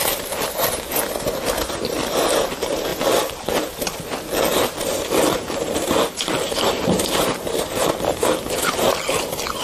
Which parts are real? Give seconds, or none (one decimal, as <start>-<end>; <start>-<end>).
0.0-2.9; 7.9-9.6